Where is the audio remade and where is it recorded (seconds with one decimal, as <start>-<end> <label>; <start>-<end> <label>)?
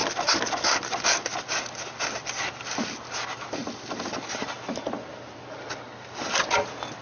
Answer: 0.0-7.0 recorded